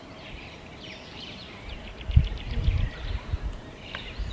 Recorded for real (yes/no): no